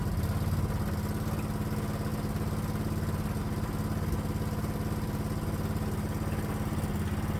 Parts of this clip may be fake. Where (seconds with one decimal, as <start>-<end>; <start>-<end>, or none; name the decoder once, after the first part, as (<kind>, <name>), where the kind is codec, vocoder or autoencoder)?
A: none